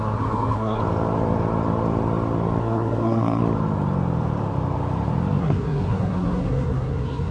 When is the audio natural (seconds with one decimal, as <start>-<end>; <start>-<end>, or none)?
0.8-2.6; 3.4-5.4